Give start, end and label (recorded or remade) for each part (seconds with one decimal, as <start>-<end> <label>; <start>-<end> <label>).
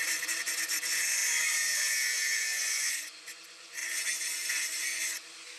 0.0-5.6 remade